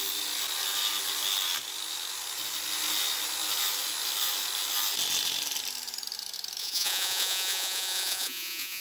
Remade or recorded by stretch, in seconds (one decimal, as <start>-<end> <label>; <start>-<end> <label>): 0.0-6.6 recorded; 6.6-8.8 remade